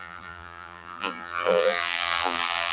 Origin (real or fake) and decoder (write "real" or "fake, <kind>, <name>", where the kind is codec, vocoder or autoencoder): fake, vocoder, BigVGAN v2